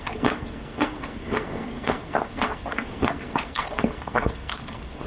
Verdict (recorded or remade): remade